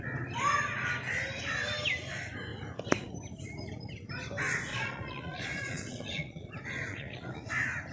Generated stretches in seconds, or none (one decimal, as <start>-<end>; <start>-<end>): 4.7-6.5; 6.9-7.5